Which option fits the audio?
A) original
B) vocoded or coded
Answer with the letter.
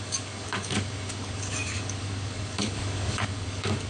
B